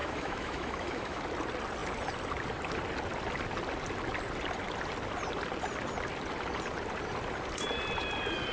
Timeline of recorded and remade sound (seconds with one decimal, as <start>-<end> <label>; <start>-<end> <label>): 0.0-1.2 remade; 1.2-8.5 recorded